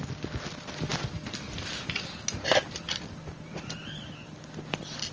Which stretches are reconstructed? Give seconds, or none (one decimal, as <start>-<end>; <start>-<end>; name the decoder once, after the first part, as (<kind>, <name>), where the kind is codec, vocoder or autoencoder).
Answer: none

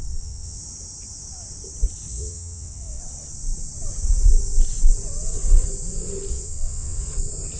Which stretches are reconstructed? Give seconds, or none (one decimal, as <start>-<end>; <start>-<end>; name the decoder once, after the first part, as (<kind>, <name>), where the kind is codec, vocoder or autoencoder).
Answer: 0.0-0.6 (vocoder, WaveNeXt); 2.1-3.0; 6.3-7.1